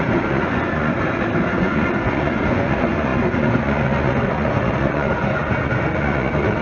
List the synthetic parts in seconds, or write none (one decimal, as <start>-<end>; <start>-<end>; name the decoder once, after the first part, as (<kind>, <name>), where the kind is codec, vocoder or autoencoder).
0.0-0.9 (vocoder, Vocos); 1.5-6.6